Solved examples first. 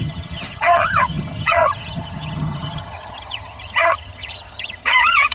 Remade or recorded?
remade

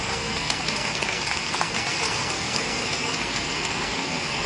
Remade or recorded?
remade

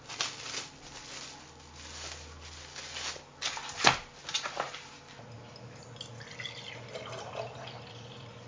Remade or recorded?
recorded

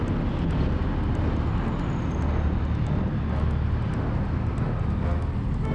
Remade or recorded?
recorded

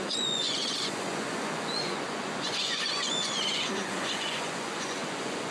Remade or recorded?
remade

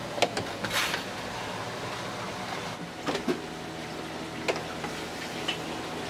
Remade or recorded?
recorded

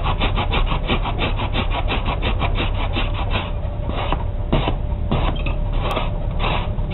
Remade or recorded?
recorded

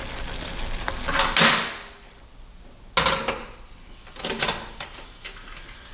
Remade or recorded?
recorded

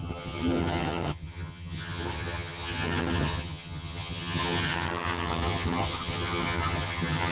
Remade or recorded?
remade